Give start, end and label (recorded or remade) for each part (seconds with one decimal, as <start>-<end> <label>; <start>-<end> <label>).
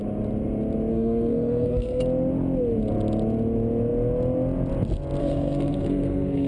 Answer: 0.0-0.9 recorded; 0.9-2.0 remade; 2.0-5.2 recorded; 5.2-6.5 remade